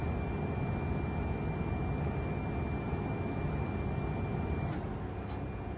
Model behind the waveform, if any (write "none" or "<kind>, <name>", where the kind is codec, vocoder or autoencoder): none